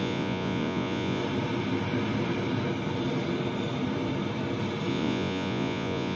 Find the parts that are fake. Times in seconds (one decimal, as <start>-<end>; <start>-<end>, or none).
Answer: 0.0-1.2; 4.9-6.2